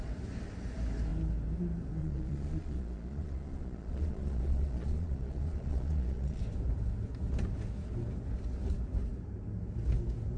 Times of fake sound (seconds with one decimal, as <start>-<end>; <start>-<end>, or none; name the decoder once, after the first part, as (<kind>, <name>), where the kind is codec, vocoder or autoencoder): 2.0-6.4 (vocoder, Vocos)